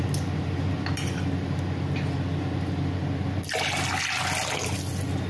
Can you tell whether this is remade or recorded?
recorded